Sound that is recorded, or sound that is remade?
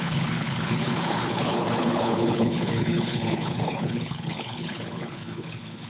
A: remade